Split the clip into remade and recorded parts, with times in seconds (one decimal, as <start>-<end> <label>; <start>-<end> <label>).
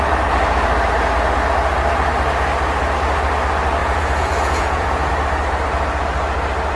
0.0-3.8 recorded; 3.8-5.1 remade; 5.1-6.8 recorded